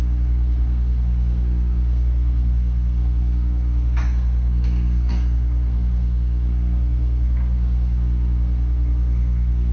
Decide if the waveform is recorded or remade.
remade